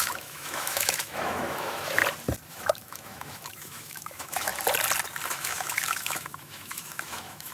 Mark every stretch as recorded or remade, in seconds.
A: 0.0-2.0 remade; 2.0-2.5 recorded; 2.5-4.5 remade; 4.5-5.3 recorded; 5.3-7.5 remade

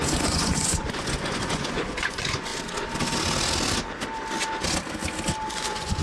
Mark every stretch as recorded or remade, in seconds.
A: 0.0-2.5 remade; 2.5-5.5 recorded; 5.5-6.0 remade

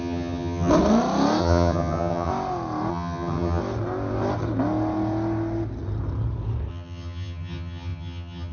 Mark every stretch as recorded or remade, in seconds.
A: 0.0-0.7 remade; 0.7-1.4 recorded; 1.4-2.3 remade; 2.3-2.9 recorded; 2.9-3.6 remade; 3.6-6.7 recorded; 6.7-8.5 remade

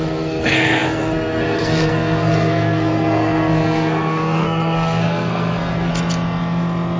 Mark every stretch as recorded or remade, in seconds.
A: 0.0-5.9 remade; 5.9-7.0 recorded

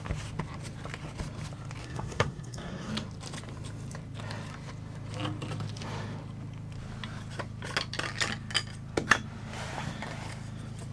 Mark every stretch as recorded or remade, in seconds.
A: 0.0-1.8 recorded; 1.8-2.9 remade; 2.9-10.9 recorded